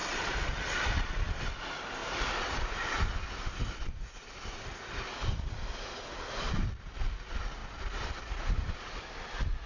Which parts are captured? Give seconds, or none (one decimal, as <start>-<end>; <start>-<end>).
1.4-9.7